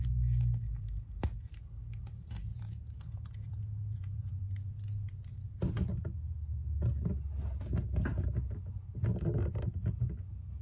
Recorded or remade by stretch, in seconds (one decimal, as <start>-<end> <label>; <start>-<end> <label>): 0.0-2.5 recorded; 2.5-4.3 remade; 4.3-10.6 recorded